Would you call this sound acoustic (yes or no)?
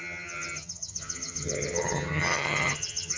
no